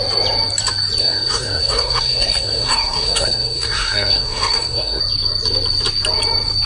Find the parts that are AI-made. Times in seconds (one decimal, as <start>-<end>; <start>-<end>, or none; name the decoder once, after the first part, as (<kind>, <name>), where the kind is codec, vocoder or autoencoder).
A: 1.0-5.0 (codec, SNAC)